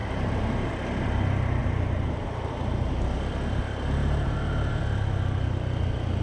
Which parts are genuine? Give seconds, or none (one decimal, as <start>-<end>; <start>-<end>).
0.7-1.6; 2.5-4.0; 4.8-6.2